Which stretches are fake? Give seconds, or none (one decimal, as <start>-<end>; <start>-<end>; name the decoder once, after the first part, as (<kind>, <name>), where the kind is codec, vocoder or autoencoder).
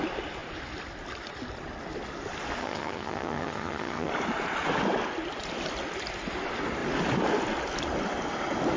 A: 2.6-4.1 (vocoder, HiFi-GAN)